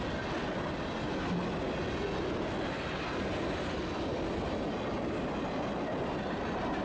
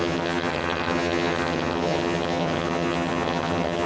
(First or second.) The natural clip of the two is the first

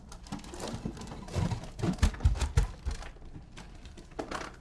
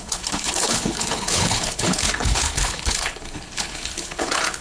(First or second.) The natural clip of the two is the first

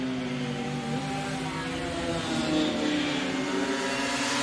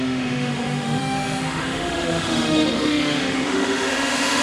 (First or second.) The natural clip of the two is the first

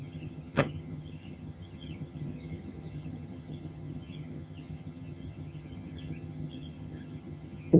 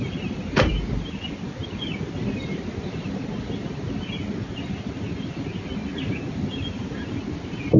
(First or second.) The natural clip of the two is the second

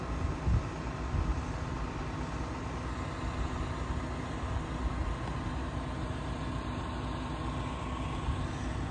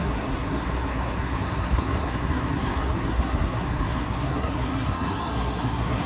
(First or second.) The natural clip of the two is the first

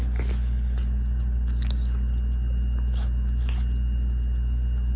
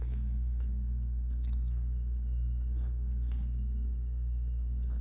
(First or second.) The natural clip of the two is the first